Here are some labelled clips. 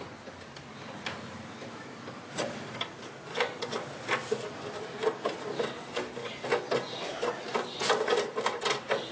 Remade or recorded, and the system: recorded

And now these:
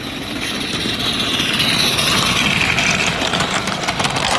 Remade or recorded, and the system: recorded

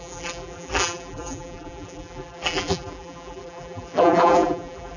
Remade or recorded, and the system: remade, vocoder, BigVGAN v2